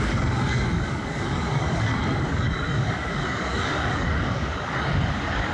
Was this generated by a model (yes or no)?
yes